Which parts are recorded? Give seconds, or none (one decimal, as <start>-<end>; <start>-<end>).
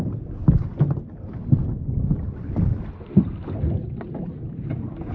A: 0.0-5.1